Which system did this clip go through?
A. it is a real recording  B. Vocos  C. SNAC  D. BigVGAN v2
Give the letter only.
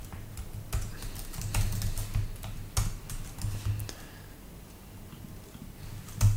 A